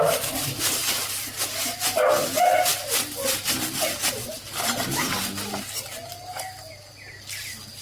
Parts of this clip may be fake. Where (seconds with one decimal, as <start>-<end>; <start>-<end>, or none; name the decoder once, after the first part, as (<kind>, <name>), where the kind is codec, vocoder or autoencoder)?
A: none